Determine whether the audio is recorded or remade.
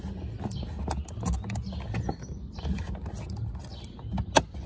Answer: recorded